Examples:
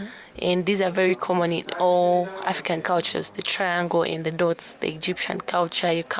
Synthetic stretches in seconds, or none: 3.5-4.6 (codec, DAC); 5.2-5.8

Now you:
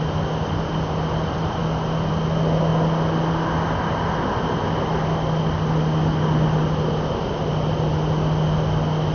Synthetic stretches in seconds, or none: none

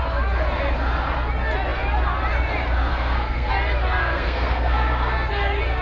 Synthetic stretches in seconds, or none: 2.9-3.5 (codec, SNAC); 4.0-5.3

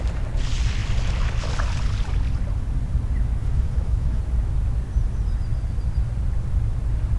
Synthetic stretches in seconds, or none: 3.4-4.2 (codec, DAC)

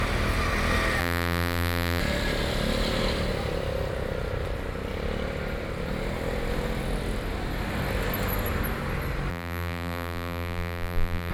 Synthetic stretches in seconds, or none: 1.0-2.0 (vocoder, BigVGAN v2); 9.3-11.3

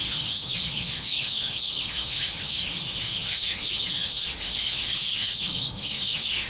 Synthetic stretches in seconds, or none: 0.0-6.5 (autoencoder, DAC-VAE)